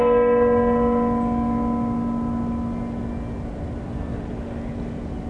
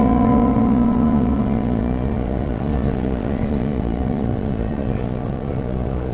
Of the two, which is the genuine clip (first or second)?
first